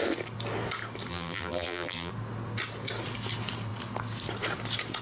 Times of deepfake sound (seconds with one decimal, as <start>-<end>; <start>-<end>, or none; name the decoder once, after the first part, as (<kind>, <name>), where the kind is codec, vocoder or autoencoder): 1.1-2.1 (vocoder, BigVGAN v2)